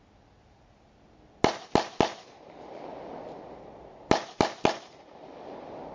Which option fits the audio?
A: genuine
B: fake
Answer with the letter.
A